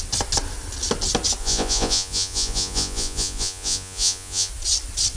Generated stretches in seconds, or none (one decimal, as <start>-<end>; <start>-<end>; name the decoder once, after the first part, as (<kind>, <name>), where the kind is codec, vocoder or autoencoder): 1.4-4.5 (vocoder, Vocos)